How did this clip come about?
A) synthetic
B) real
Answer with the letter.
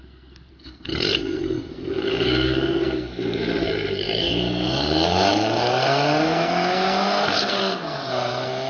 A